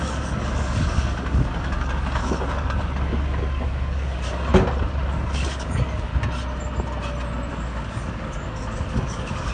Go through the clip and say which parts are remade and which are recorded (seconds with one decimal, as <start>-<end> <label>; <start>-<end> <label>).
0.0-4.5 remade; 4.5-5.1 recorded; 5.1-6.1 remade; 6.1-7.5 recorded; 7.5-9.5 remade